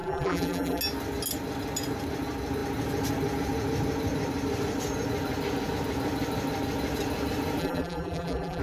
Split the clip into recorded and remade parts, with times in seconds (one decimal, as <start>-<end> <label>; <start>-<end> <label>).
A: 0.0-0.8 remade; 0.8-7.6 recorded; 7.6-8.6 remade